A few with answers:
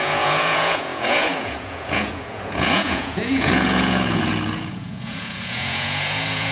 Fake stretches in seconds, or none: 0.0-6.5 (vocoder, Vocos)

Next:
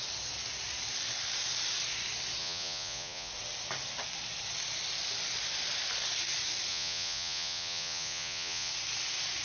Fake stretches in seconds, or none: 2.4-3.3 (vocoder, Vocos); 6.7-8.7

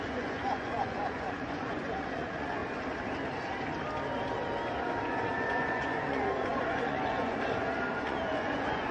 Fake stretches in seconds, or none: 0.0-2.6 (vocoder, Vocos); 5.0-8.9

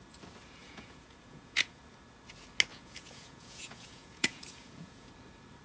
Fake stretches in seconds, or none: 0.6-1.8 (vocoder, Vocos); 2.7-5.1